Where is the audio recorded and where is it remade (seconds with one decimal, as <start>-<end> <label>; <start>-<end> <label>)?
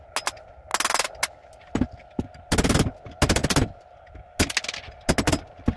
0.0-5.8 recorded